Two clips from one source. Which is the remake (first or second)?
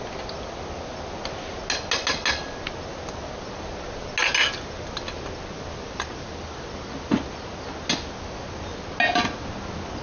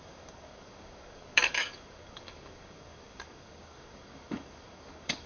second